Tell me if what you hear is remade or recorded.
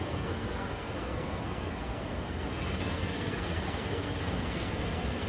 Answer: remade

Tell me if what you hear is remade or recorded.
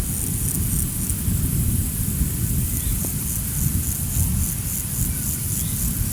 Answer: recorded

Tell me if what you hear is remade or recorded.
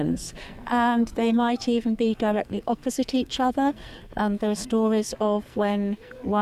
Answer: remade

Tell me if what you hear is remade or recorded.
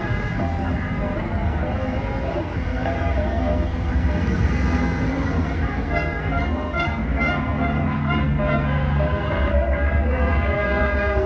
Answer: remade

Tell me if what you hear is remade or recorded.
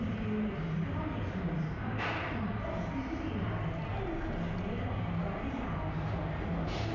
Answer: recorded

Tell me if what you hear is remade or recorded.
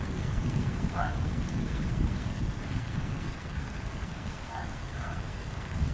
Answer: remade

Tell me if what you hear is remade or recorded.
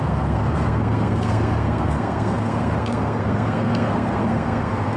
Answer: remade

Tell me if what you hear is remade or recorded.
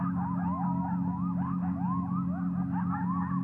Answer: recorded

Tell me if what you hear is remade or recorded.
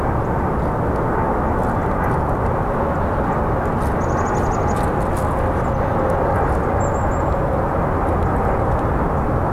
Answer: recorded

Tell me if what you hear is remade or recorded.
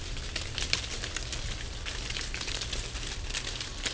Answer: recorded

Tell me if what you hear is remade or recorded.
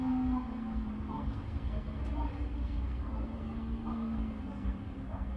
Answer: remade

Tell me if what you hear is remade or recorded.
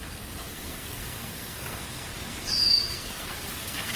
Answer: remade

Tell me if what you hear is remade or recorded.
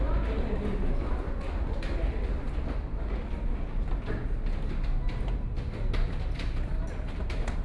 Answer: recorded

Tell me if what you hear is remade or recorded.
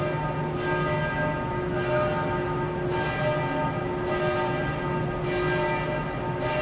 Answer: recorded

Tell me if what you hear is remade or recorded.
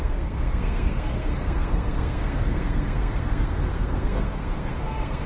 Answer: remade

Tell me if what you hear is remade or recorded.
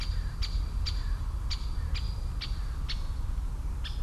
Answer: recorded